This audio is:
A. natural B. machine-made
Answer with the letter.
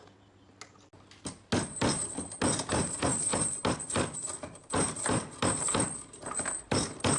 A